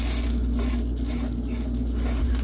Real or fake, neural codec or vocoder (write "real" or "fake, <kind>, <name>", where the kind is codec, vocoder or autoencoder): real